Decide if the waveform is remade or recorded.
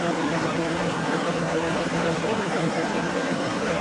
remade